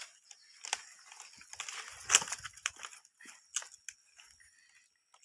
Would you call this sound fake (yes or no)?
no